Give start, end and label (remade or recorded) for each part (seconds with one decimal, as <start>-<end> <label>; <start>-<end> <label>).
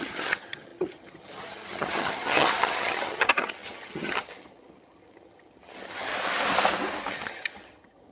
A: 0.0-6.1 remade; 6.1-7.1 recorded; 7.1-8.1 remade